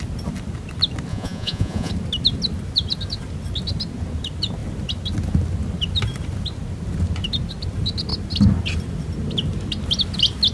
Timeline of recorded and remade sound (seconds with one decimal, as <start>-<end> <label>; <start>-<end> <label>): 0.0-1.1 recorded; 1.1-1.9 remade; 1.9-10.5 recorded